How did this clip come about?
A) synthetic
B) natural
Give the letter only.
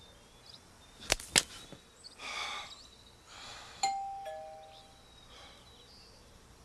B